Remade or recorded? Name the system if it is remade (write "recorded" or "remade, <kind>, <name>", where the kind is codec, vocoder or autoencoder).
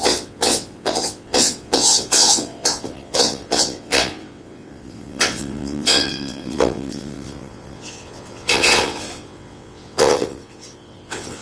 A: remade, vocoder, WaveNeXt